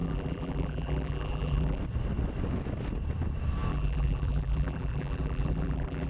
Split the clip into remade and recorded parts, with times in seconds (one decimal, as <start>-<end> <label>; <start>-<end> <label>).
0.0-1.8 remade; 1.8-3.7 recorded; 3.7-6.1 remade